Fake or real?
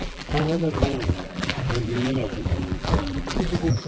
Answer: fake